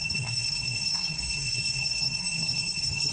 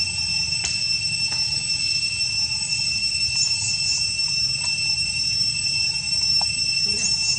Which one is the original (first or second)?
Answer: second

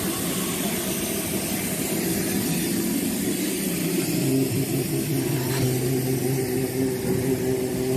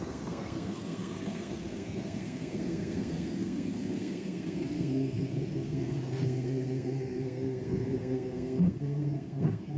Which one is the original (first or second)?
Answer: first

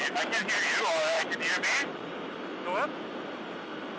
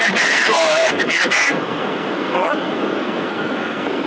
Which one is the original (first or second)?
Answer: first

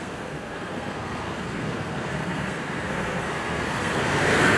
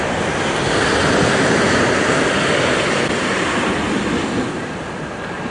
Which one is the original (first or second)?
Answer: second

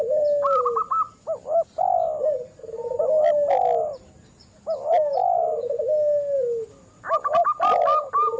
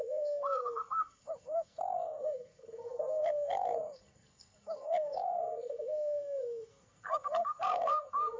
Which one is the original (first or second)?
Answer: first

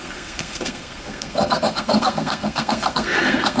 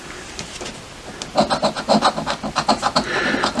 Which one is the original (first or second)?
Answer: second